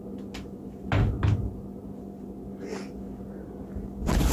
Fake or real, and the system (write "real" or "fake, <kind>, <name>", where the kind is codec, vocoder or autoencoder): real